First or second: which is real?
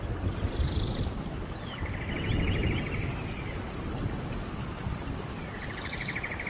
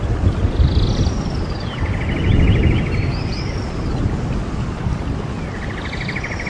second